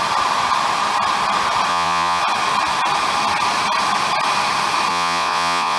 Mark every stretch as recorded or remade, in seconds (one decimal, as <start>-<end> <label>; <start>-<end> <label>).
0.0-1.7 recorded; 1.7-2.2 remade; 2.2-4.9 recorded; 4.9-5.8 remade